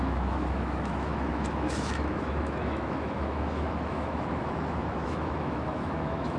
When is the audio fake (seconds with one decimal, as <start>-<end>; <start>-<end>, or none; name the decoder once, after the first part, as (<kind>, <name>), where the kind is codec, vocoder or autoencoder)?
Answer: 0.0-6.4 (autoencoder, DAC-VAE)